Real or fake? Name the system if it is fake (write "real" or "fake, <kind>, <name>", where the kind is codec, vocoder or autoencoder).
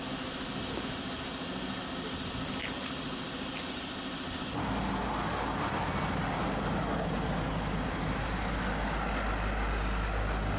real